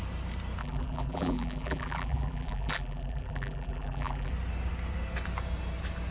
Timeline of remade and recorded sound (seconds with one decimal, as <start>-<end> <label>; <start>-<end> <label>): 0.0-0.6 recorded; 0.6-4.3 remade; 4.3-6.1 recorded